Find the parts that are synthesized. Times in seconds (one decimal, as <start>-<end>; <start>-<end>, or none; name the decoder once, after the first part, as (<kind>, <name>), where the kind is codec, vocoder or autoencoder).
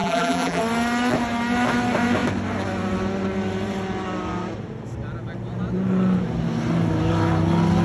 0.0-0.6 (vocoder, BigVGAN v2)